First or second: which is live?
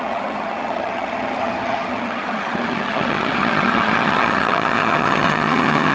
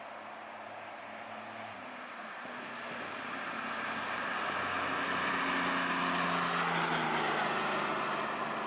second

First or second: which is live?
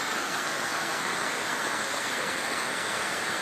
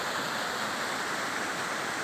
second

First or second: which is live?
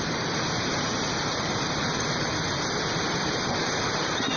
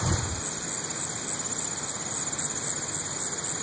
second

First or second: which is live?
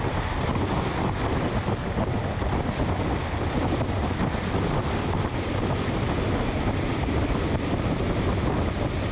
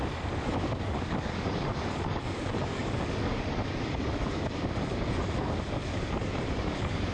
first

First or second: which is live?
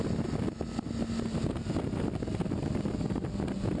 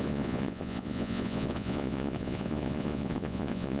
first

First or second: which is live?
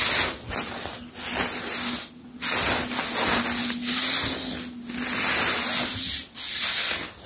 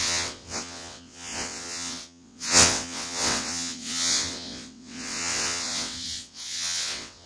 first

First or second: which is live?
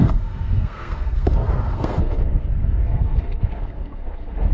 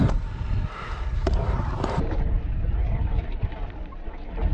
second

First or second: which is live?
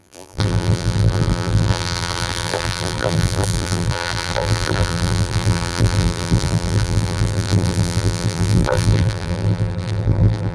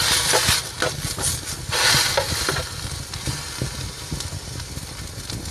second